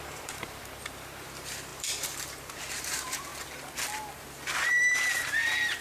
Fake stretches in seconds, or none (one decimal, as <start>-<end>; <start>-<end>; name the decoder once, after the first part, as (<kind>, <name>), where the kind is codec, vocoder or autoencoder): 0.0-3.3 (vocoder, BigVGAN v2); 4.6-5.8